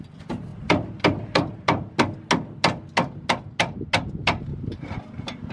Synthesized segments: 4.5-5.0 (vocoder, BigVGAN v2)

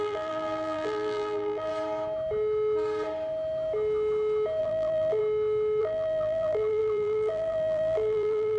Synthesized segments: 0.0-1.7 (vocoder, BigVGAN v2); 4.6-5.2; 5.8-8.6

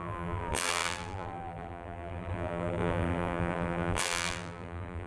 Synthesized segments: 0.0-5.1 (vocoder, BigVGAN v2)

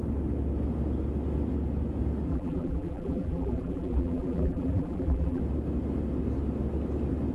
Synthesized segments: 2.3-5.4 (vocoder, BigVGAN v2)